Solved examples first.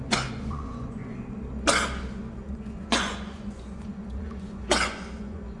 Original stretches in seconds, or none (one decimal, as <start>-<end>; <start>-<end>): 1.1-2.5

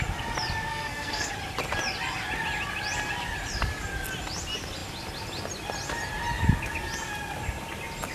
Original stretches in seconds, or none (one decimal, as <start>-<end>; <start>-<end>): 0.0-0.7; 1.3-8.1

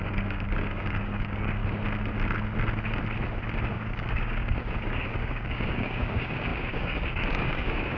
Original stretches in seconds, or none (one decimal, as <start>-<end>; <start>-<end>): 1.6-3.7

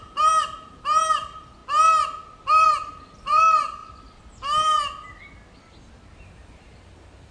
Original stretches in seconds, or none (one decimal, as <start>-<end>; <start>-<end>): 1.6-2.5; 3.8-6.1

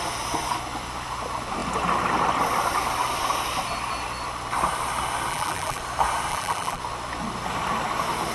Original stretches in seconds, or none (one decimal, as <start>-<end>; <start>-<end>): 0.0-5.3; 5.8-6.3; 6.8-8.3

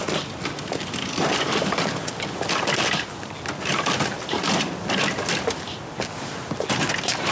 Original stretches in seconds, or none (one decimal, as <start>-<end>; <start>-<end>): 0.0-7.3

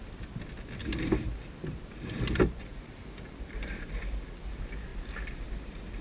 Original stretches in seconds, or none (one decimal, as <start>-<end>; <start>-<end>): 0.0-6.0

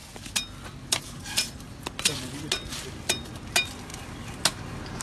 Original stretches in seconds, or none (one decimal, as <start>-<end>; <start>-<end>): 0.0-5.0